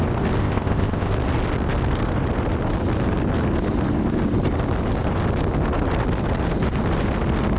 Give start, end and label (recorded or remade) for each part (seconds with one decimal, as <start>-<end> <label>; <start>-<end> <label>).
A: 0.0-0.4 recorded; 0.4-1.1 remade; 1.1-7.6 recorded